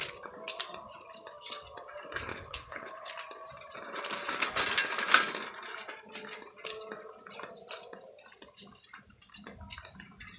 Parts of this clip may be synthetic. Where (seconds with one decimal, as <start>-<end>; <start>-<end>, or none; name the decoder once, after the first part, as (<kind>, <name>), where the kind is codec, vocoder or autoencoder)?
2.3-3.1 (codec, HILCodec)